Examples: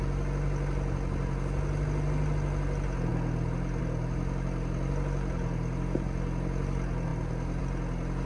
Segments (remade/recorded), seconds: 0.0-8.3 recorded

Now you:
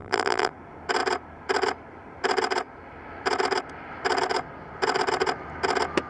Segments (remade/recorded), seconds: 0.0-0.5 remade; 0.5-6.1 recorded